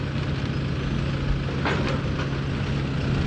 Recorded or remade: recorded